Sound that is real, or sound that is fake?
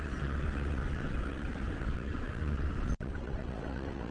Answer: fake